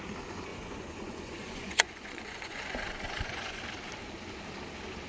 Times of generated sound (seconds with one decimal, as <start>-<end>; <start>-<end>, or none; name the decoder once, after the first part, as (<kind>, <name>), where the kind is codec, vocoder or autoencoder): 0.5-3.6 (vocoder, Vocos)